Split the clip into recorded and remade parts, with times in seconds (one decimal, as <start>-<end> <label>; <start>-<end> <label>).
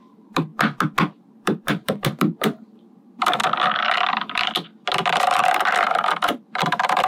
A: 0.0-0.5 remade; 0.5-1.3 recorded; 1.3-3.4 remade; 3.4-5.1 recorded; 5.1-7.1 remade